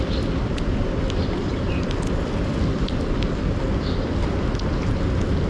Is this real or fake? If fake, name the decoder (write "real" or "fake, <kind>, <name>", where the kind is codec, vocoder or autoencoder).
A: real